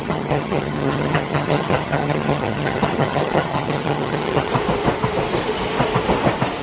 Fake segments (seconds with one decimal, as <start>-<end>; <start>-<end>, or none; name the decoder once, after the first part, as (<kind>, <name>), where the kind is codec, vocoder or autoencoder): 0.0-4.5 (vocoder, HiFi-GAN)